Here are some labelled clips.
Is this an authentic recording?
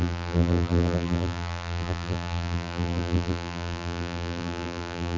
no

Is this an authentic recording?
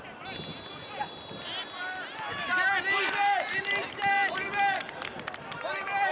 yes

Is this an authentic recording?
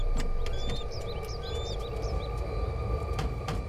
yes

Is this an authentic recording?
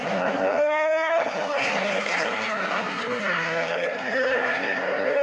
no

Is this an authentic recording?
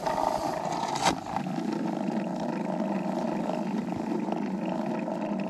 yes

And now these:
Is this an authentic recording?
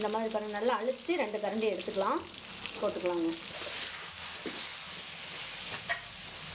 yes